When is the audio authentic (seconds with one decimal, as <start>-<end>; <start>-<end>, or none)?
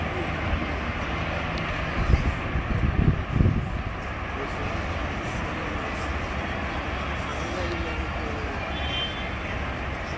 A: 0.0-10.2